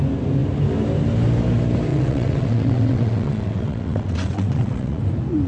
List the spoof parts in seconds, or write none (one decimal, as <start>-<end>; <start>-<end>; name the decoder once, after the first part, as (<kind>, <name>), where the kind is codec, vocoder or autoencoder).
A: 1.9-5.0 (vocoder, WaveNeXt)